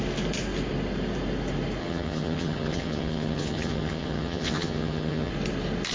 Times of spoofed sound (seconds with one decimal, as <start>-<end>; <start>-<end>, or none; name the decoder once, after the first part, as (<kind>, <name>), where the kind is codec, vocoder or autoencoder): 1.8-5.3 (vocoder, HiFi-GAN)